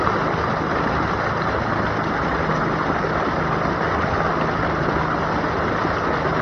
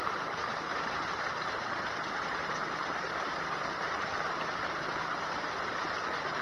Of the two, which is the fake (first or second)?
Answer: second